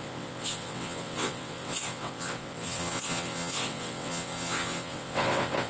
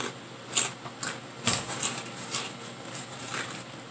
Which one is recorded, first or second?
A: second